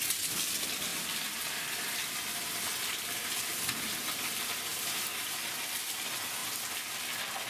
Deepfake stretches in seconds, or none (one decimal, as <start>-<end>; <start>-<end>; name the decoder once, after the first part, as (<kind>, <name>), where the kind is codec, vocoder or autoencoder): 0.9-5.4 (vocoder, BigVGAN v2); 6.4-7.0